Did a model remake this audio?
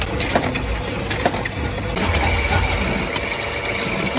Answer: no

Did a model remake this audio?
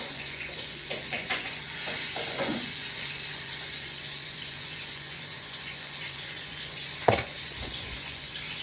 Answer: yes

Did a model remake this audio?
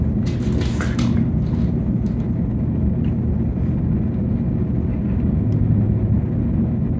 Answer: no